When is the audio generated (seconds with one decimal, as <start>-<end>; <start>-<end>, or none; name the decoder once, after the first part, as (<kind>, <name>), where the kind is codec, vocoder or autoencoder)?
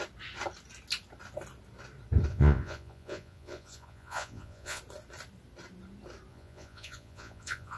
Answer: 2.3-4.8 (vocoder, Vocos); 6.3-7.8